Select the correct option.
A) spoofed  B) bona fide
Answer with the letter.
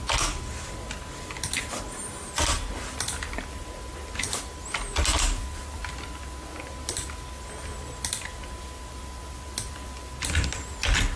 B